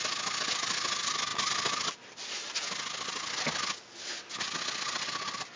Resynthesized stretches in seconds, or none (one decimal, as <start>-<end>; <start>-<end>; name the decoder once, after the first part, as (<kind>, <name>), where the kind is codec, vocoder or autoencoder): none